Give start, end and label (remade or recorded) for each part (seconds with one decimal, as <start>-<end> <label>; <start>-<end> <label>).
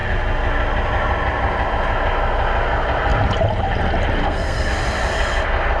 0.0-4.2 recorded; 4.2-4.7 remade; 4.7-5.8 recorded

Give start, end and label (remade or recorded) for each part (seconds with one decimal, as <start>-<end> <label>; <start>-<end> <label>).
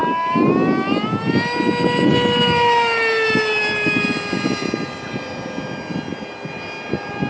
0.0-7.3 recorded